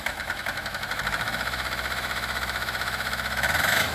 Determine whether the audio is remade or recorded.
remade